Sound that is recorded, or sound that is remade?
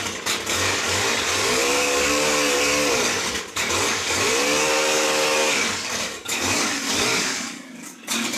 remade